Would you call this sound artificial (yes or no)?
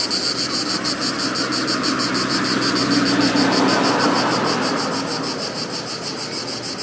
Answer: no